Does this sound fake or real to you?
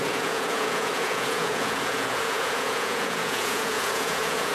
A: fake